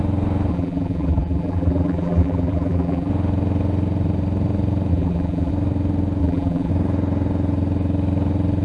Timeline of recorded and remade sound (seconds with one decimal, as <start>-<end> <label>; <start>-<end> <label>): 0.0-0.5 recorded; 0.5-3.1 remade; 3.1-4.9 recorded; 4.9-5.5 remade; 5.5-6.2 recorded; 6.2-6.7 remade; 6.7-8.6 recorded